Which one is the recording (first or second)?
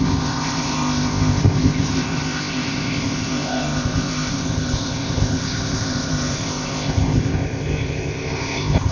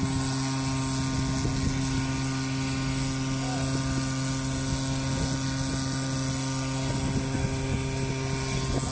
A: second